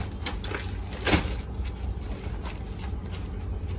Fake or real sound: real